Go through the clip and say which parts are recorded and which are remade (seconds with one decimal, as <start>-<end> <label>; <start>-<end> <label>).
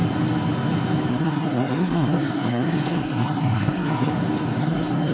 0.0-1.1 recorded; 1.1-4.1 remade; 4.1-4.6 recorded; 4.6-5.1 remade